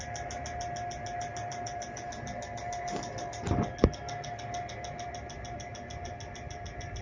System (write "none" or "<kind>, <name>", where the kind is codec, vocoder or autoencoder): none